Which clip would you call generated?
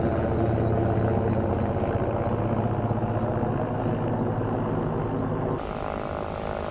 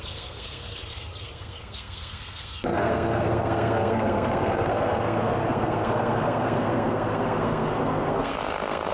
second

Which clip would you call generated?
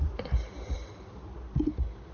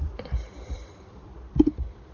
second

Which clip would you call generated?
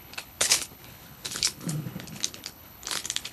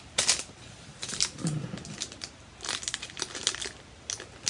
first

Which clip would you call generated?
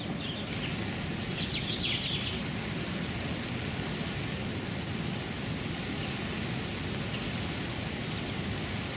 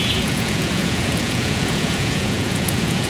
second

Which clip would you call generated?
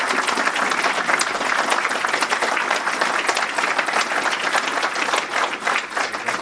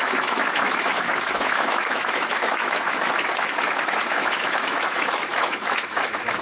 second